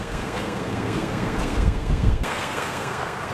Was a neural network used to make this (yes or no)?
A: yes